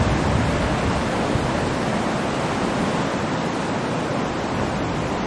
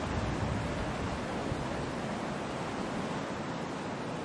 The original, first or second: second